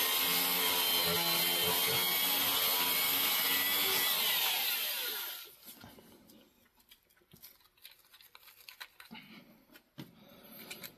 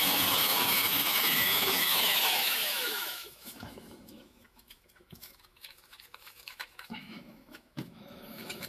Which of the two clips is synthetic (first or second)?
second